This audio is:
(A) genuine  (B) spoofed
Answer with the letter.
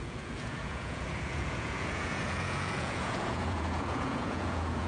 B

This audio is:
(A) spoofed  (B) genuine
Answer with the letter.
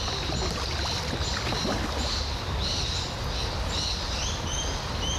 B